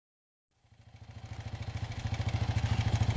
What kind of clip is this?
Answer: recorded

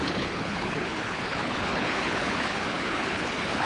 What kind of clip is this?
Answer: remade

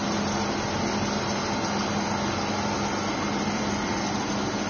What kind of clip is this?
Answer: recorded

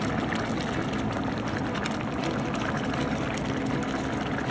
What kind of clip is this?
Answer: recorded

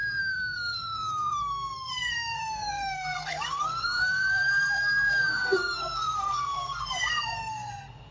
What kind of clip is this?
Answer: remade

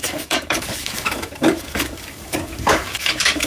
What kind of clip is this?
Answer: remade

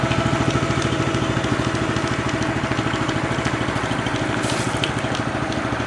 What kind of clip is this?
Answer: recorded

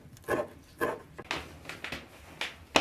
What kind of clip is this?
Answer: recorded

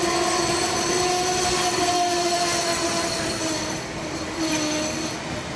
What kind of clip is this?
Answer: recorded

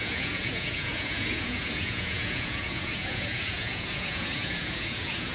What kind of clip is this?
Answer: remade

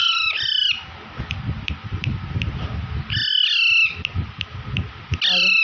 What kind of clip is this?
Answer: recorded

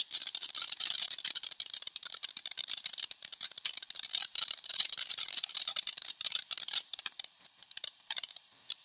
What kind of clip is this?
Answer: remade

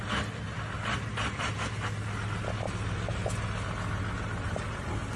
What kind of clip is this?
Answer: recorded